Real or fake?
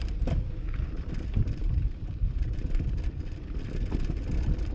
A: real